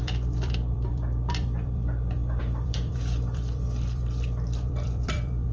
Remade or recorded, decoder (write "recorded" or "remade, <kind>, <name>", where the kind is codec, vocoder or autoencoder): remade, vocoder, BigVGAN v2